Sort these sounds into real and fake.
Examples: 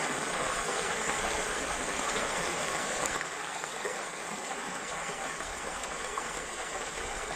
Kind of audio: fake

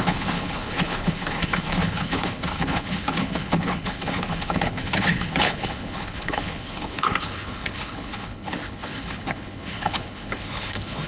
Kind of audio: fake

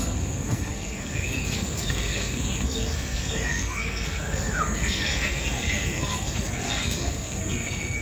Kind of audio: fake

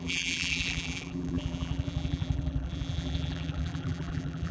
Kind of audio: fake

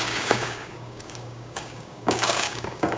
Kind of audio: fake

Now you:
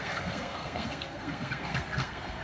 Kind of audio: fake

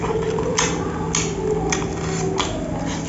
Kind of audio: real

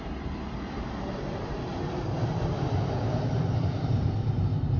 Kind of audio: fake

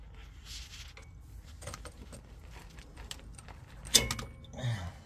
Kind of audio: real